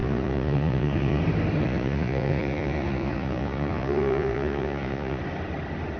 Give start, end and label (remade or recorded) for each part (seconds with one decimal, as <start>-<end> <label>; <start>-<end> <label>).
0.0-1.2 remade; 1.2-1.6 recorded; 1.6-5.2 remade; 5.2-6.0 recorded